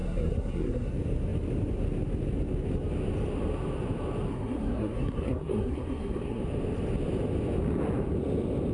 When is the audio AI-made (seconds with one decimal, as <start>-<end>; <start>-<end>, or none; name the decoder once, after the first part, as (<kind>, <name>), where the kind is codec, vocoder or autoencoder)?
0.0-0.9 (codec, SNAC); 4.3-6.4